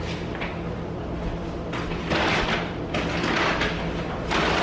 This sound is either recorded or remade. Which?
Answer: remade